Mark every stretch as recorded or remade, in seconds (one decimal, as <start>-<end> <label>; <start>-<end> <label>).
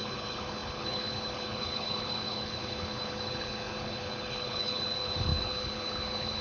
0.0-6.4 remade